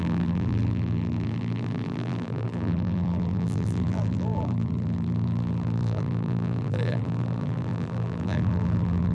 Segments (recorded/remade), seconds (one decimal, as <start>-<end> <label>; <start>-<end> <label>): 0.0-9.1 remade